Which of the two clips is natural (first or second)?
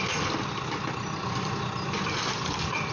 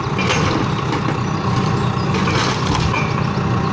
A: second